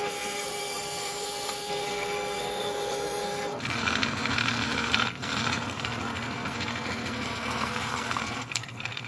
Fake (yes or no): yes